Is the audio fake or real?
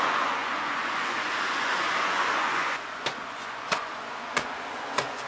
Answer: fake